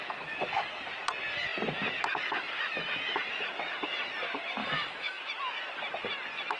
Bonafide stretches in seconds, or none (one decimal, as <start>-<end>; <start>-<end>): 0.0-4.6; 5.2-6.6